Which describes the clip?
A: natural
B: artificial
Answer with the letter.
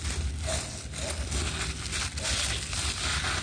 A